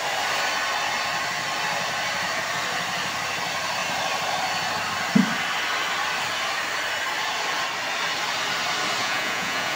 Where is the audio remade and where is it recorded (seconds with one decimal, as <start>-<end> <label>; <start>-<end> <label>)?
0.0-9.0 recorded; 9.0-9.8 remade